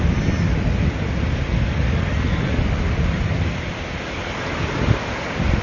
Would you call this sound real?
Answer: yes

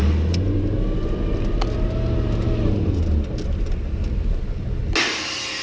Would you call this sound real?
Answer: yes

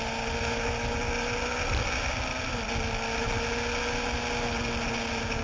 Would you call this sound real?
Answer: yes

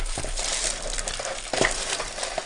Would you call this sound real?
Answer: yes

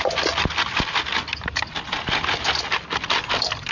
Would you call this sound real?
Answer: yes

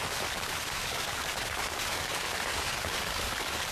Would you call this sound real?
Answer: no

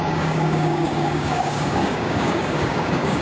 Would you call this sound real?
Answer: no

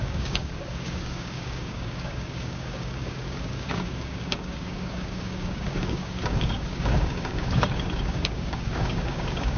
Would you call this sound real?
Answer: no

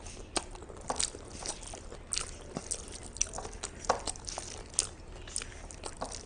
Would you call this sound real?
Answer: yes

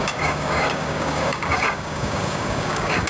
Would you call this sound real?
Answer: no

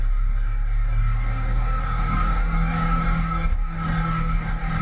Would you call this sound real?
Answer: no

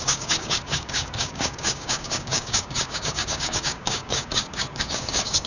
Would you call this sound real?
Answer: no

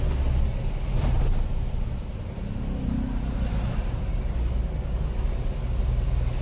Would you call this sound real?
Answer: yes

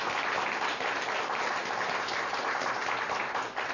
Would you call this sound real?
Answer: yes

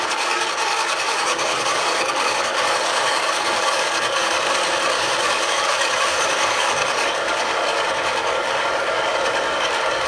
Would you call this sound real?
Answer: no